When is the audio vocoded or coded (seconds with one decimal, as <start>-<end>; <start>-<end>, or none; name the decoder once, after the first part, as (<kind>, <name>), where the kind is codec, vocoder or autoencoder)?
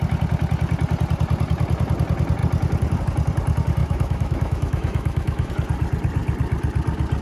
3.8-5.5 (autoencoder, DAC-VAE)